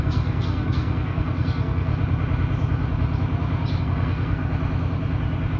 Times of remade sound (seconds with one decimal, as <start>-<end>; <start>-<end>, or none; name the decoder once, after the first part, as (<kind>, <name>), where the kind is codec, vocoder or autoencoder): 0.0-1.9 (codec, SNAC); 3.8-4.4